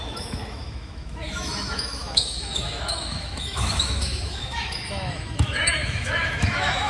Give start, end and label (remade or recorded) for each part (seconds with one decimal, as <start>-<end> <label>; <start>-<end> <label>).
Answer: 0.0-6.9 remade